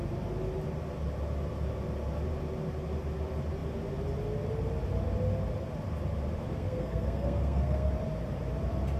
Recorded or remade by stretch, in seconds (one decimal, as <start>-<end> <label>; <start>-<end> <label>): 0.0-6.5 recorded; 6.5-7.9 remade; 7.9-9.0 recorded